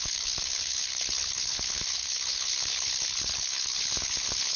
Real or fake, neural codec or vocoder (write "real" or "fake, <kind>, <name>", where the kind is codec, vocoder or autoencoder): fake, codec, HILCodec